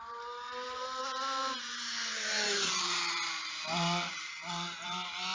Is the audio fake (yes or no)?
yes